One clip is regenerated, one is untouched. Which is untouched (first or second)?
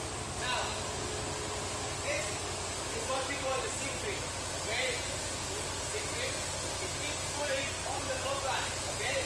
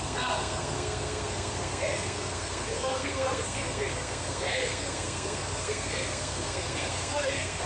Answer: first